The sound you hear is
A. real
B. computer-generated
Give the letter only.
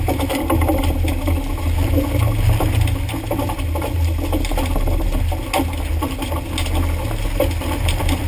A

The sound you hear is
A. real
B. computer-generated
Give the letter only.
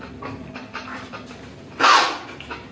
A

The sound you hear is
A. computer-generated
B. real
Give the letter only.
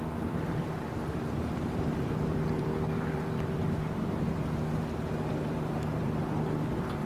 A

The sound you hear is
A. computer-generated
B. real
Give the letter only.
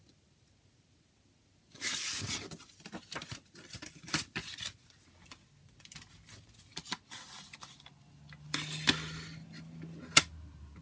B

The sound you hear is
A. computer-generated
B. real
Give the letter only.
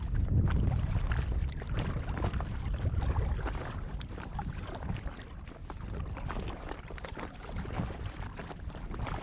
A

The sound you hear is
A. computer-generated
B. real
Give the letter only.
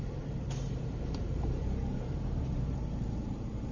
A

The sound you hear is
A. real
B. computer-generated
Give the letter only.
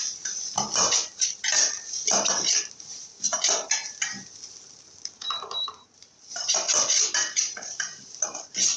B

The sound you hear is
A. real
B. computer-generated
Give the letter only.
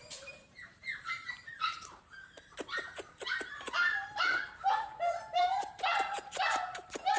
B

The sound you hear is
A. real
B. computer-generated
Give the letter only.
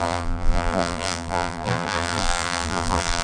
B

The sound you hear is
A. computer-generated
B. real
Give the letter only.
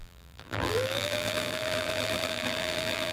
A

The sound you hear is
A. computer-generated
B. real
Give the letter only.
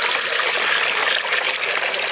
B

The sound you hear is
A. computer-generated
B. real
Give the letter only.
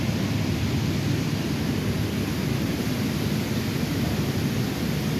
B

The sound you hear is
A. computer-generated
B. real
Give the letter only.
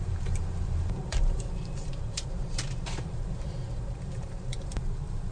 A